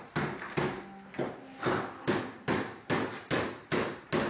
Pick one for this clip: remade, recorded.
recorded